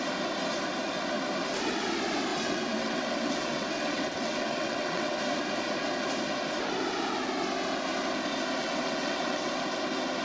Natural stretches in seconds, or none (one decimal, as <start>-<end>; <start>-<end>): 0.0-2.3; 5.2-8.6; 9.5-10.2